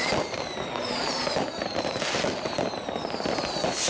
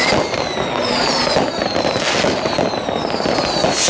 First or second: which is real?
second